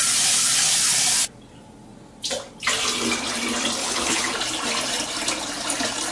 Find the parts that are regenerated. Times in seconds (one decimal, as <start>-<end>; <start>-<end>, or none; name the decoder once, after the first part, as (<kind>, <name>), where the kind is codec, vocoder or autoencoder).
3.8-4.3 (codec, HILCodec)